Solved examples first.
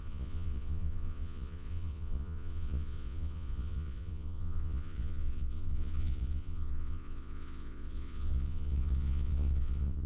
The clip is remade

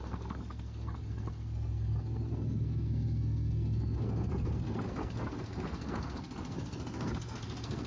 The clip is remade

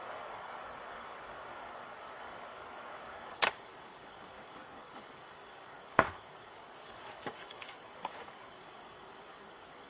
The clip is remade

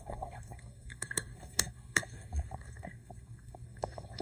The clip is remade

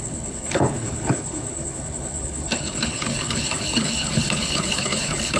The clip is remade